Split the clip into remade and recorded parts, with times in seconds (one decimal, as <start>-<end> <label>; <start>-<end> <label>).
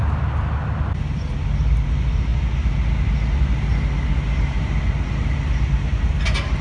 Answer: 0.0-6.6 recorded